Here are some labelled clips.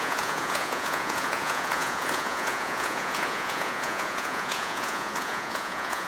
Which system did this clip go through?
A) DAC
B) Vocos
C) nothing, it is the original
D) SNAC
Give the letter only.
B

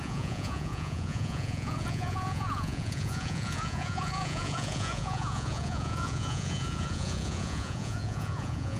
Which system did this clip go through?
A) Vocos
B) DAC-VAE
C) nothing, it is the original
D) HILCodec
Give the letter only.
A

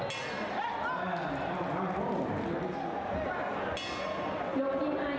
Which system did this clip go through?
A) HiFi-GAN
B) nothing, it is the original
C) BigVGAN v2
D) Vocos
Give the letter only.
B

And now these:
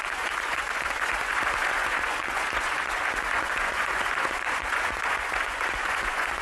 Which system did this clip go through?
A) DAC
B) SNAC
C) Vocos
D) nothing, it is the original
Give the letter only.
C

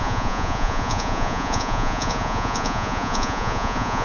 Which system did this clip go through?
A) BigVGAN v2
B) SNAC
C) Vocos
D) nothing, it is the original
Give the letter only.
C